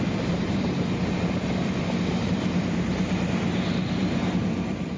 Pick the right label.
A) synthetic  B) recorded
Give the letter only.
A